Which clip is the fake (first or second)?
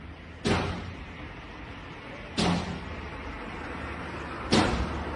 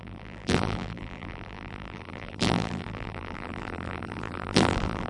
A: second